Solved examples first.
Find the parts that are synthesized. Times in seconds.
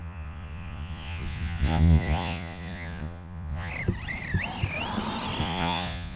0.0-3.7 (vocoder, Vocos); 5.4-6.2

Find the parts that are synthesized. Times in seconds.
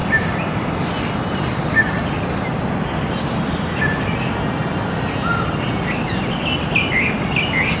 0.0-0.7 (vocoder, BigVGAN v2)